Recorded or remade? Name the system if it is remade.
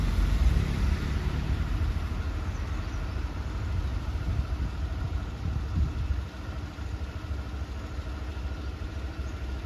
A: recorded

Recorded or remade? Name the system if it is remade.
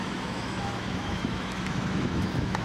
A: remade, autoencoder, DAC-VAE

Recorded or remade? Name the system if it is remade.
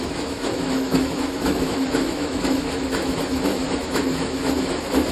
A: remade, autoencoder, DAC-VAE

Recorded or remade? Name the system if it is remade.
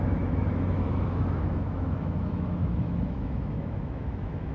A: remade, autoencoder, DAC-VAE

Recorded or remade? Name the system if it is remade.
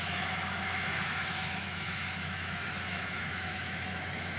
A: remade, autoencoder, DAC-VAE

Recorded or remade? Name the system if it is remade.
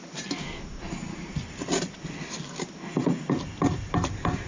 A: recorded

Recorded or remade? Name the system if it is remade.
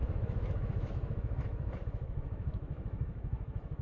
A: remade, autoencoder, DAC-VAE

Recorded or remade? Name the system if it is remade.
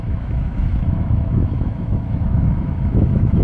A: remade, autoencoder, DAC-VAE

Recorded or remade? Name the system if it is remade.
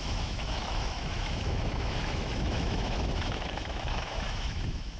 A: remade, autoencoder, DAC-VAE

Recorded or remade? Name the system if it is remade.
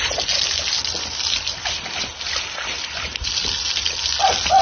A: recorded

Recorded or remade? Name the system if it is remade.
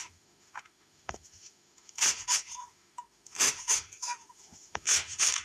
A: remade, autoencoder, DAC-VAE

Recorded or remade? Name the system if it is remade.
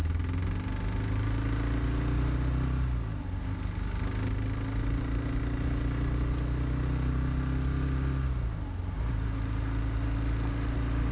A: recorded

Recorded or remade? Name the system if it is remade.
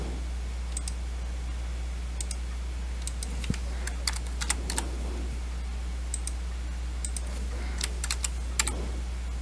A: recorded